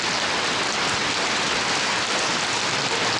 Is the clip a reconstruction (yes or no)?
no